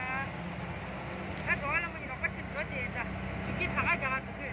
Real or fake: real